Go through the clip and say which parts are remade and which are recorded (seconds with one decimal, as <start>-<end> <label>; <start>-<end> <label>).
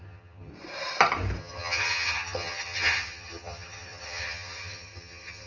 0.0-0.5 remade; 0.5-1.4 recorded; 1.4-5.5 remade